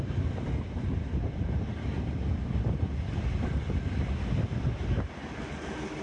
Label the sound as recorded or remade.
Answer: recorded